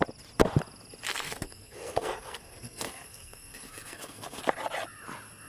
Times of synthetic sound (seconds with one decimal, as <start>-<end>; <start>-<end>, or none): 1.1-4.4